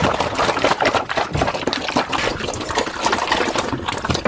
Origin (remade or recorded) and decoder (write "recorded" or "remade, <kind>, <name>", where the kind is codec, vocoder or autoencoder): recorded